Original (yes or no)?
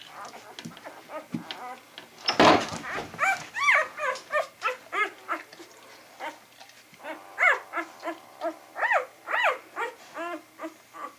yes